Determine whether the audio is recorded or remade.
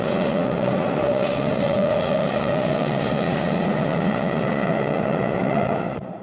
remade